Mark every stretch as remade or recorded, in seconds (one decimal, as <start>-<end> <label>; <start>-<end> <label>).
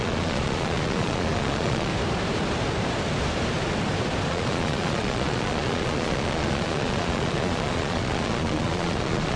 0.0-1.9 remade; 1.9-4.3 recorded; 4.3-9.4 remade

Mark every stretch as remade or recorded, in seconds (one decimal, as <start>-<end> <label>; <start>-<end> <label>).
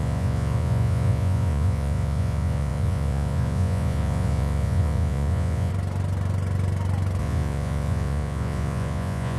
0.0-5.7 remade; 5.7-7.2 recorded; 7.2-9.4 remade